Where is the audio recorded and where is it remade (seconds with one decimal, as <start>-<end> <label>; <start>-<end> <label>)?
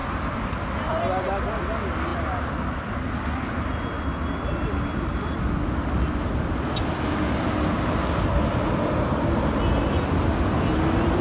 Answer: 0.0-11.2 recorded